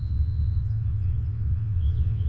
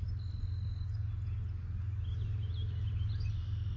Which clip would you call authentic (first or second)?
second